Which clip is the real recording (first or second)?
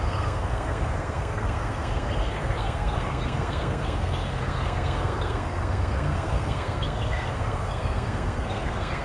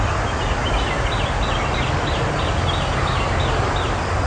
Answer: second